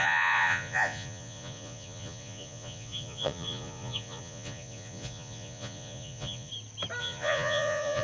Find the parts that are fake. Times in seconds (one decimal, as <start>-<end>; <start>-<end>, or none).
0.0-6.5; 7.0-8.0